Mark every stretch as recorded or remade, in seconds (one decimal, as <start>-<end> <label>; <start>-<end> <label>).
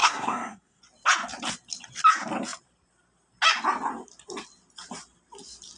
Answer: 0.0-0.8 remade; 0.8-5.8 recorded